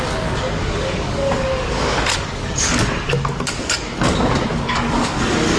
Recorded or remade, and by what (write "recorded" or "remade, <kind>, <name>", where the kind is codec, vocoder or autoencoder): remade, codec, DAC